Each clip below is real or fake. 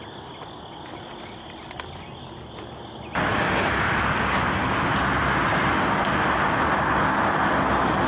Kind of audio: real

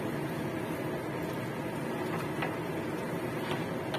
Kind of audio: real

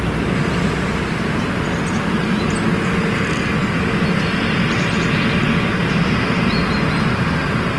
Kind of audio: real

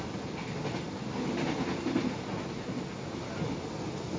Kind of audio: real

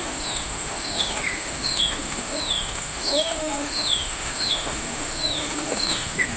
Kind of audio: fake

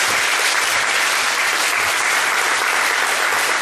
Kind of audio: real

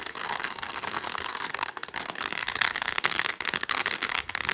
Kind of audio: fake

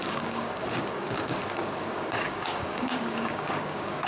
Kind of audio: fake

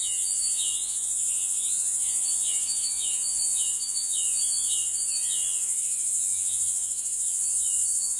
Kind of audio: fake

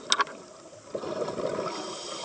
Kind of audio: real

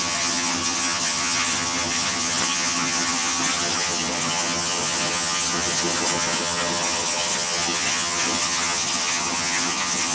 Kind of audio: fake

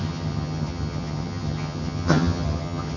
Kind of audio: fake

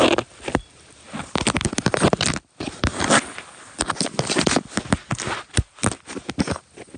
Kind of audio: real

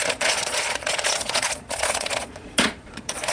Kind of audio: fake